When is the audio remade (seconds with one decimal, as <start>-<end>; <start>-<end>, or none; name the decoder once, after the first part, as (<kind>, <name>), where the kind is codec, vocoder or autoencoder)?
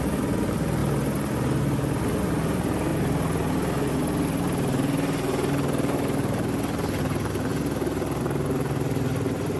none